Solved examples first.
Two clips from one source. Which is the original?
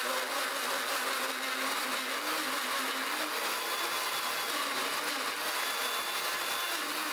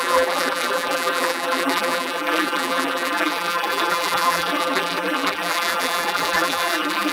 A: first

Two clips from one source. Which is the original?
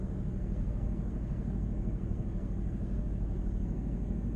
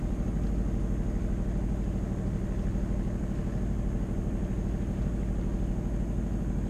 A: second